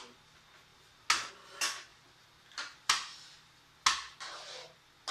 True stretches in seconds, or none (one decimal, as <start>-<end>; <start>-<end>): 0.0-5.1